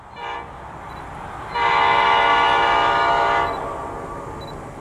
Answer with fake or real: real